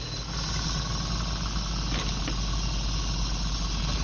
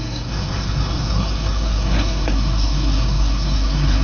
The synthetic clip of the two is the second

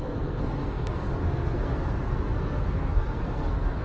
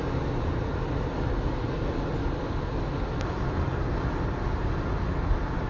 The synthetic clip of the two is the first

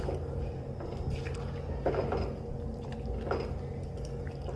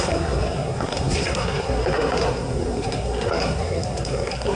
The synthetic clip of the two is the second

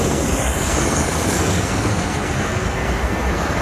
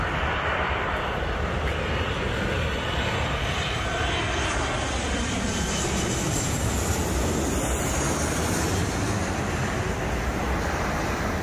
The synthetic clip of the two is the first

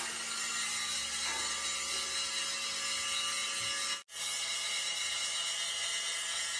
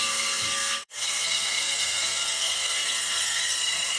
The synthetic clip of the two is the second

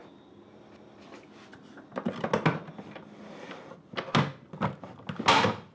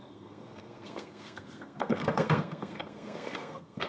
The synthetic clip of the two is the second